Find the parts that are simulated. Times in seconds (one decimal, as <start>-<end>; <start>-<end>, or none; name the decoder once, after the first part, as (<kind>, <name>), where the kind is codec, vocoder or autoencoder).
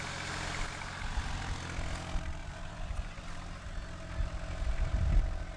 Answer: 2.4-3.2 (vocoder, Vocos)